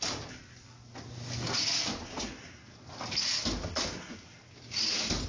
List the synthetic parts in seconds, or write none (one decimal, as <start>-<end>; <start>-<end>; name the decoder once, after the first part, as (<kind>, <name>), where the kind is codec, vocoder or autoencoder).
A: none